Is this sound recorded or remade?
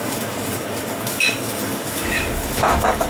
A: remade